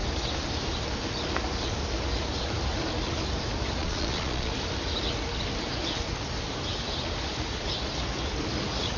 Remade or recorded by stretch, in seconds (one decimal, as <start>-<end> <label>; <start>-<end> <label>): 0.0-3.8 recorded; 3.8-4.5 remade; 4.5-9.0 recorded